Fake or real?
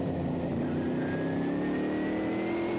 real